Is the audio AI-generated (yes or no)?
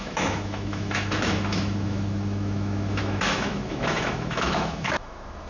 yes